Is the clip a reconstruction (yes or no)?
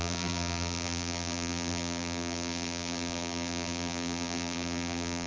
yes